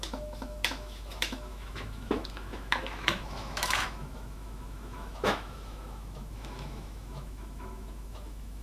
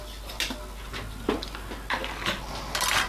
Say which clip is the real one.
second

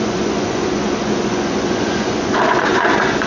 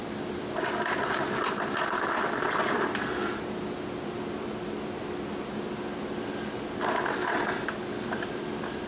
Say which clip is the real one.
second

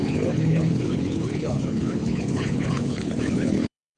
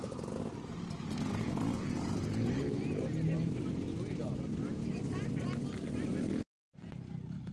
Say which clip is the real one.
second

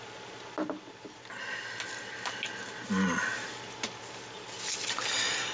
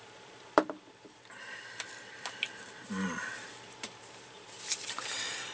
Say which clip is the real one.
first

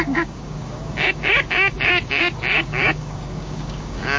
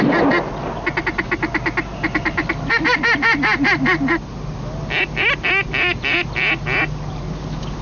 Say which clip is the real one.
second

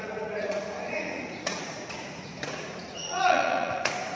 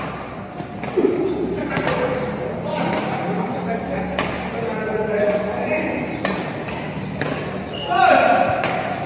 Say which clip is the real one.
second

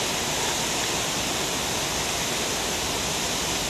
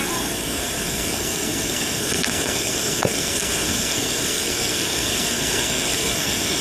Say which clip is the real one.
first